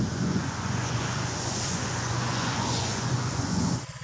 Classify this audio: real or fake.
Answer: fake